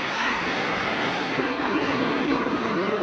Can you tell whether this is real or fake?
fake